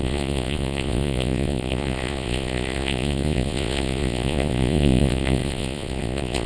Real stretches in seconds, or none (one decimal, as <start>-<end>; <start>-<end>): none